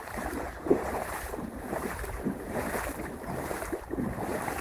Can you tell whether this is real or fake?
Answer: fake